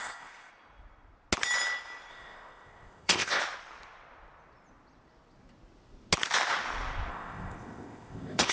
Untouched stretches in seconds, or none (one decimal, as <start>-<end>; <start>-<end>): 0.5-2.1; 3.4-7.1